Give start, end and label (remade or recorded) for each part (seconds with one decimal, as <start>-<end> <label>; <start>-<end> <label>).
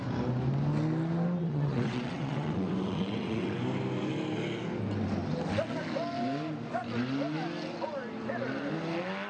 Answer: 0.0-1.4 recorded; 1.4-3.6 remade; 3.6-9.3 recorded